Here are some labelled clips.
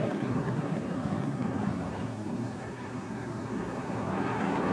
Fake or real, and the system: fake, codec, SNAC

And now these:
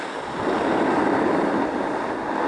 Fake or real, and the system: real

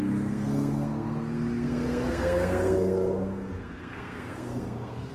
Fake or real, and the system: fake, codec, SNAC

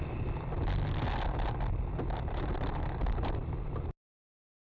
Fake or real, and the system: real